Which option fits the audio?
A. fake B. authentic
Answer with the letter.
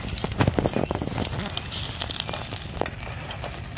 B